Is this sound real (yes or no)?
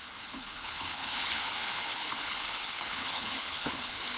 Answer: no